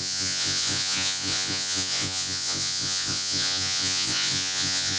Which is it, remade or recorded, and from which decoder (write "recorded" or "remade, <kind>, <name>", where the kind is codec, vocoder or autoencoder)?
remade, vocoder, Vocos